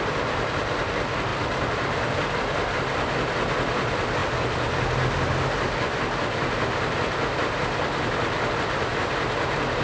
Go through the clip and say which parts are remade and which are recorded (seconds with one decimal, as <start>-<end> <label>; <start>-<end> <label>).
0.0-9.8 recorded